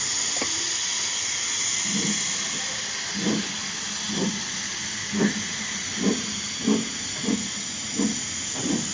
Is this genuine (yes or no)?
yes